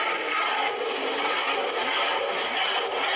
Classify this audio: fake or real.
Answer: real